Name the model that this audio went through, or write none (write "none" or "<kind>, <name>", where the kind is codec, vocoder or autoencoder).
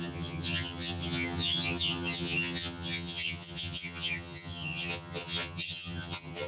vocoder, HiFi-GAN